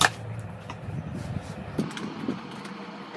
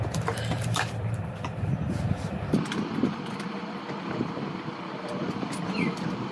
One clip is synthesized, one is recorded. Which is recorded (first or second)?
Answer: first